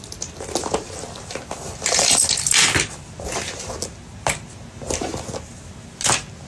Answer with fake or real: real